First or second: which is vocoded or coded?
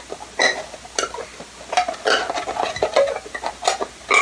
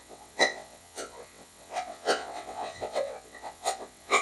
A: second